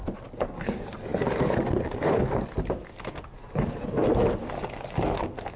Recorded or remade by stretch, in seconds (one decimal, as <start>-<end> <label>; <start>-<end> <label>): 0.0-5.6 recorded